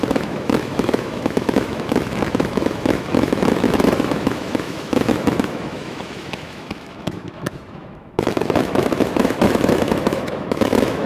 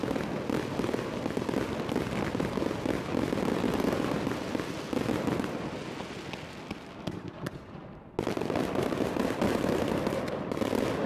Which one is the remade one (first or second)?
first